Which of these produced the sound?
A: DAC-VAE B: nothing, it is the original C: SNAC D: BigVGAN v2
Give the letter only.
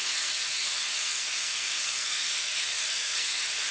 C